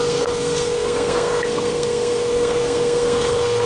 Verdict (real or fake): fake